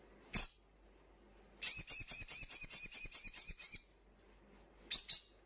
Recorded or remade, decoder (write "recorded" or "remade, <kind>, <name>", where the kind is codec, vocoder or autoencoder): recorded